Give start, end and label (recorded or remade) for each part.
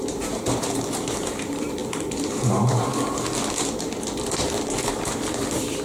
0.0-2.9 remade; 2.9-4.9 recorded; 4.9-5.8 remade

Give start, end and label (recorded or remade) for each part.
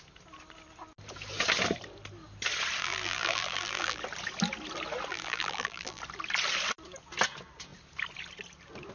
0.0-2.8 recorded; 2.8-4.0 remade; 4.0-5.1 recorded; 5.1-6.0 remade; 6.0-8.9 recorded